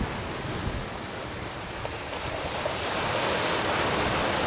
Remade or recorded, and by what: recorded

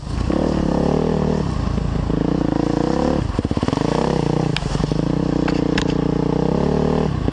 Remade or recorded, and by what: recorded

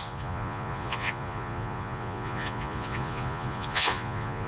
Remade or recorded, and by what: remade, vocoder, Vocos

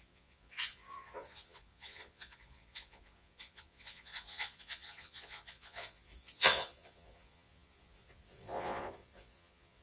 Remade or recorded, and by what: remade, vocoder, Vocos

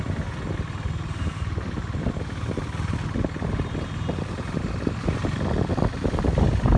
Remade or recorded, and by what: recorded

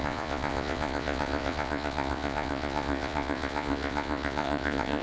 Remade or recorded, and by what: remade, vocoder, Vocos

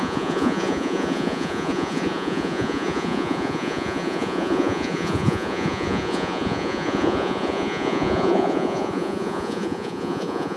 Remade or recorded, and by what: remade, vocoder, Vocos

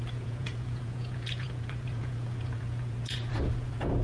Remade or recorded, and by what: remade, vocoder, Vocos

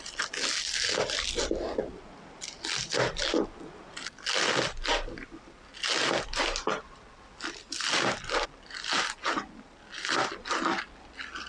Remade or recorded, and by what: recorded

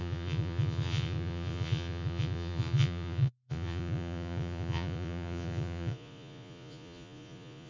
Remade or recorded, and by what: remade, vocoder, Vocos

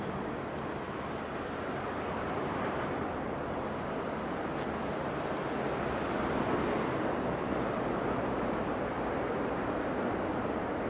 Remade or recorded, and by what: recorded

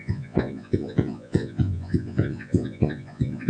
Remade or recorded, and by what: remade, vocoder, Vocos